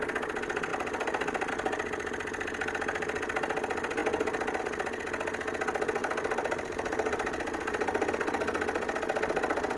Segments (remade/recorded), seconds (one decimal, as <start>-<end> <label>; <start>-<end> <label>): 0.0-0.7 recorded; 0.7-1.5 remade; 1.5-6.0 recorded; 6.0-8.1 remade; 8.1-9.8 recorded

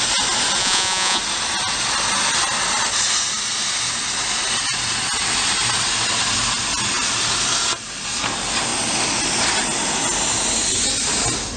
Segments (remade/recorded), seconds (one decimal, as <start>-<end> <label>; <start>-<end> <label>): 0.0-0.6 recorded; 0.6-1.2 remade; 1.2-11.6 recorded

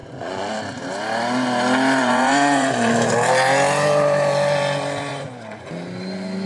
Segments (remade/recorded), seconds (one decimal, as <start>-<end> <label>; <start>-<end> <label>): 0.0-0.5 remade; 0.5-2.0 recorded; 2.0-2.9 remade; 2.9-5.1 recorded; 5.1-5.7 remade; 5.7-6.5 recorded

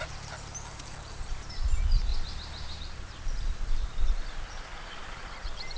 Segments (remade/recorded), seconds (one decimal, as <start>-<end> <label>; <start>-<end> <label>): 0.0-2.1 remade; 2.1-2.8 recorded; 2.8-5.8 remade